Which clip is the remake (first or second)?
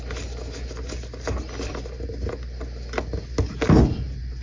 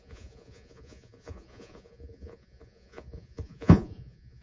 second